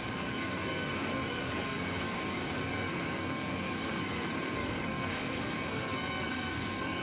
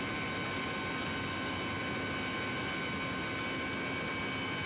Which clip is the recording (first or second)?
second